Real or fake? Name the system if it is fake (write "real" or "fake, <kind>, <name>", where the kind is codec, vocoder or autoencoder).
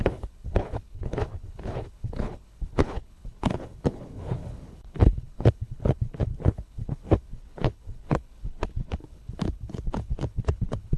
fake, codec, HILCodec